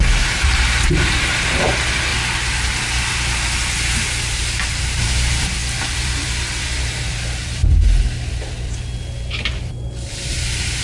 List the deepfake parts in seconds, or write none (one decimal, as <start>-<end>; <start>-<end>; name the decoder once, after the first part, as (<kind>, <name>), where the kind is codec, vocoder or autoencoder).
0.0-2.1 (vocoder, BigVGAN v2); 4.8-7.6; 10.1-10.8